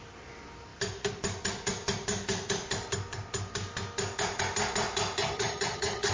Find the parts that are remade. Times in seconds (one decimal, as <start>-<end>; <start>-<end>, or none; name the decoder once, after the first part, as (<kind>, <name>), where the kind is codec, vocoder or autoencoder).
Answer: 5.2-6.1 (vocoder, HiFi-GAN)